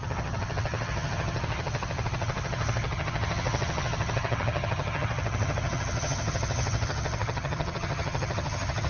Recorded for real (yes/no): no